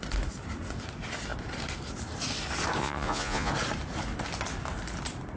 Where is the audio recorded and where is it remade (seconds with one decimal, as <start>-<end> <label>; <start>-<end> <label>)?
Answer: 0.0-2.8 recorded; 2.8-3.5 remade; 3.5-5.4 recorded